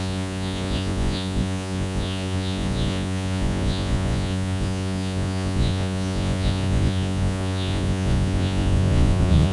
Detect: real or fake fake